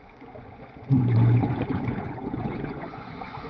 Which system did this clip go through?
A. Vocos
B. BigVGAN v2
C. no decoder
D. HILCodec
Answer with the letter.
A